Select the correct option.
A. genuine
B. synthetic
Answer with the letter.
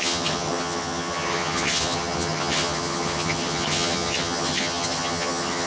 B